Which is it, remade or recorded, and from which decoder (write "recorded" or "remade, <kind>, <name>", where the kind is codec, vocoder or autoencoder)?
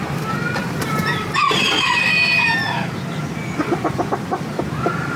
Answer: recorded